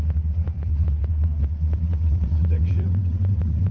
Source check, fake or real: fake